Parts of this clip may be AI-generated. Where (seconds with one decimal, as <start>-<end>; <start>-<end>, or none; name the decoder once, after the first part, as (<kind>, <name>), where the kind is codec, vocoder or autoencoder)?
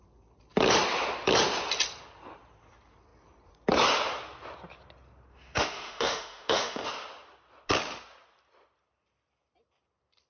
5.3-6.9 (autoencoder, DAC-VAE)